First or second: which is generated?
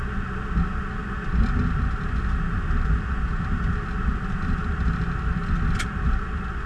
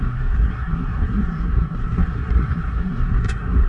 second